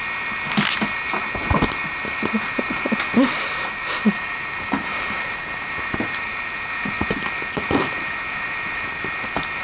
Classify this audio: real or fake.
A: real